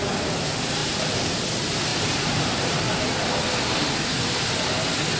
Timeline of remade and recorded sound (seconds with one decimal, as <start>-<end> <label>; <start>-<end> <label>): 0.0-0.8 recorded; 0.8-1.4 remade; 1.4-1.9 recorded; 1.9-2.8 remade; 2.8-5.2 recorded